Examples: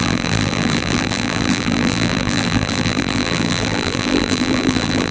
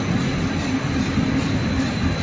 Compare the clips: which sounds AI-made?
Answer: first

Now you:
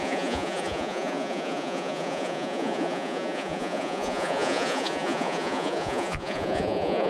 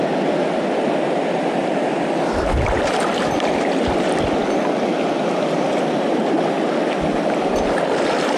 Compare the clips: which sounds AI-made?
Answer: first